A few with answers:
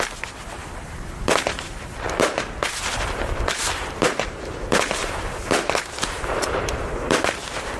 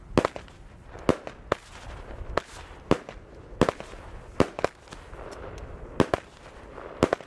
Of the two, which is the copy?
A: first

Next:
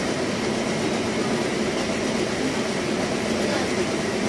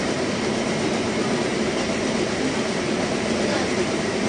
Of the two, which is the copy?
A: second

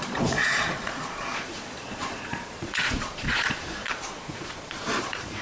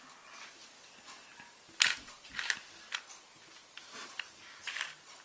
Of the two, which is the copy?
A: first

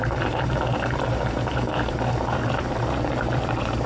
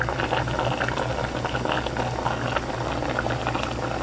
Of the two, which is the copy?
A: first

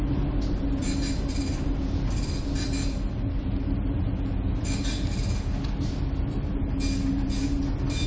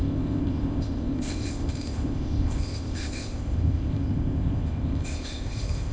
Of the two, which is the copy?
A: second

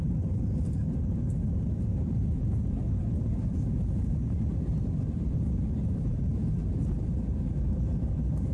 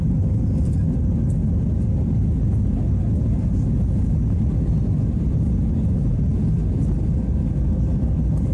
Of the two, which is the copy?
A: first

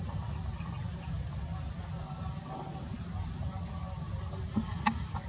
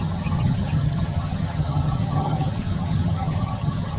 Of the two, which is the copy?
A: second